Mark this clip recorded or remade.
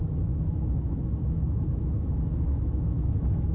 remade